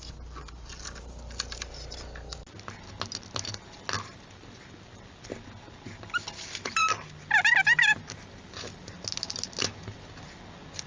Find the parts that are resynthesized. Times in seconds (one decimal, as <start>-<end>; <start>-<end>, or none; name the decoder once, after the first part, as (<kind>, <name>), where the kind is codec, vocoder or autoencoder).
none